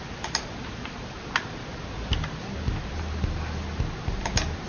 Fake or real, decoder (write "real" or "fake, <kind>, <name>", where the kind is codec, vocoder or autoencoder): real